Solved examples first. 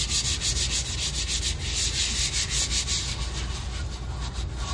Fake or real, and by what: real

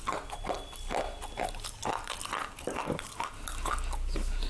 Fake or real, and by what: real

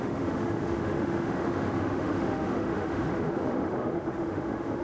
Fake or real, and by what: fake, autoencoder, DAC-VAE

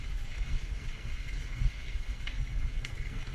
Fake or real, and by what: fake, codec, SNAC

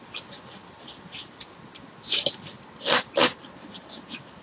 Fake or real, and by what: real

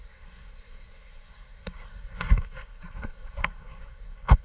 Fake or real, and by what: fake, codec, SNAC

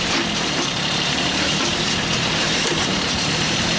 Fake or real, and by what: fake, vocoder, BigVGAN v2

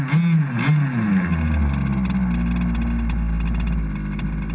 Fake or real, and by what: real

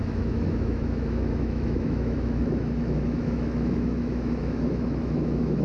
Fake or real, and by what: fake, autoencoder, DAC-VAE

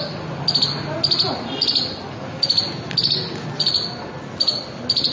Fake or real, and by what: real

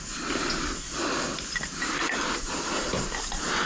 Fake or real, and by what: real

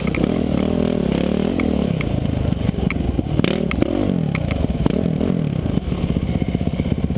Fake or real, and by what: real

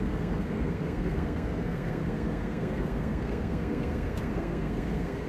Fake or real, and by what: fake, codec, SNAC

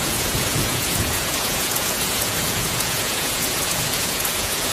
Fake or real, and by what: fake, vocoder, Vocos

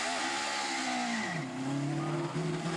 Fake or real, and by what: real